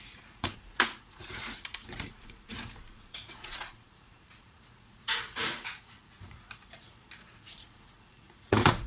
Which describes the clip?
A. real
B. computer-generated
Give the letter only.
B